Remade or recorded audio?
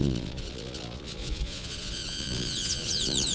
remade